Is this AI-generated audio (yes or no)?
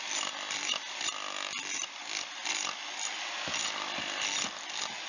no